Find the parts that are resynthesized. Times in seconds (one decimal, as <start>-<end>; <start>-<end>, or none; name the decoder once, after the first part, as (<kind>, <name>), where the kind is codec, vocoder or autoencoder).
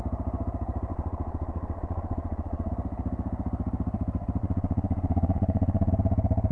0.9-2.7 (vocoder, WaveNeXt); 4.4-5.9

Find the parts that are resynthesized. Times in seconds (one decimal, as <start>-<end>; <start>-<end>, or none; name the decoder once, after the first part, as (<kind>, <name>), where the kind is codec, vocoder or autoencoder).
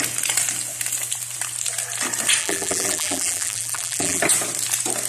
2.4-4.2 (vocoder, BigVGAN v2)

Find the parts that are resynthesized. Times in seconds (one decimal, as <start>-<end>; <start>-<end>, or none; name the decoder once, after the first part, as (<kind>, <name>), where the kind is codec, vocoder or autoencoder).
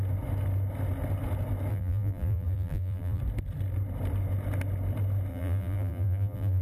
1.7-3.2 (vocoder, BigVGAN v2); 5.3-6.6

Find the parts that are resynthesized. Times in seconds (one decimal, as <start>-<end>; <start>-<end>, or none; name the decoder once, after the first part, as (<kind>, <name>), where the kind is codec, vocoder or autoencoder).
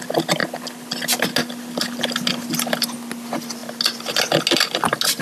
none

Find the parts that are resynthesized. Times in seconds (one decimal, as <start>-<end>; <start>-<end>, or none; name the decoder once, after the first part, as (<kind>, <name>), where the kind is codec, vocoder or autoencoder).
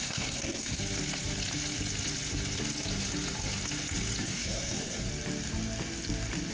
0.0-0.8 (codec, SNAC); 4.2-5.1